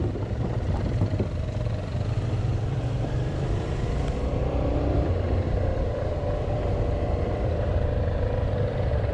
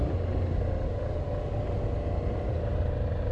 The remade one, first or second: first